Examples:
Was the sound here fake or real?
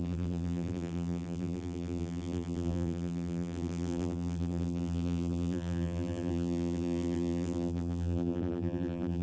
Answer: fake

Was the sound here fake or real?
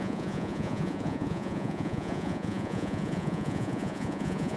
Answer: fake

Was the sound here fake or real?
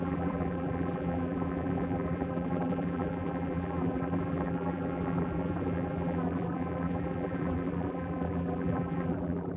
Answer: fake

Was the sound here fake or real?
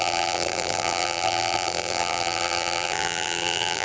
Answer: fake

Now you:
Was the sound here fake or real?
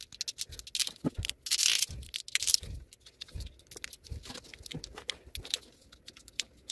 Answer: real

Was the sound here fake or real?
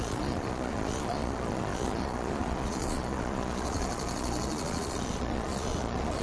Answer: fake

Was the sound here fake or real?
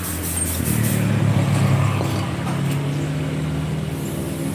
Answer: real